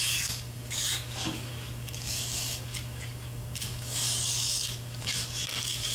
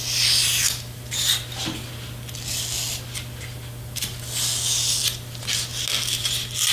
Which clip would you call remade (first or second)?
first